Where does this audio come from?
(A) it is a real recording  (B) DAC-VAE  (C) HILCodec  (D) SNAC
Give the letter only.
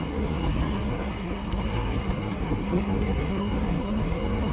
D